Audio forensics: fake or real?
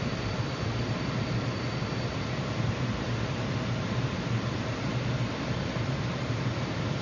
fake